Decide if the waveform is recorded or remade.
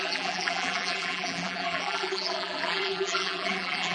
remade